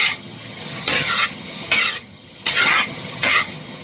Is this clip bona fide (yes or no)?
no